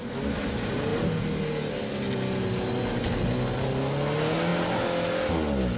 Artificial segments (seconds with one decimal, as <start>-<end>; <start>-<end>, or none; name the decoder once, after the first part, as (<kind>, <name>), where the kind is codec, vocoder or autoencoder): none